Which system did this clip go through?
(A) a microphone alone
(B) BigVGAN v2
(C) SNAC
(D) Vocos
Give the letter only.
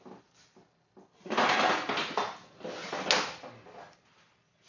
A